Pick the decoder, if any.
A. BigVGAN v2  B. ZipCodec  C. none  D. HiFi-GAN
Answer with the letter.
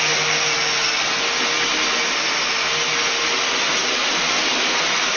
C